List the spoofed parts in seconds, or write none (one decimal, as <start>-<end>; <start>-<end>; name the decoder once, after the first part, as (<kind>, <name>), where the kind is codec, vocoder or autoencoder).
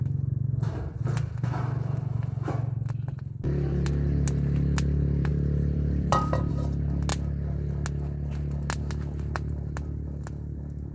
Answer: 5.3-6.5 (vocoder, BigVGAN v2)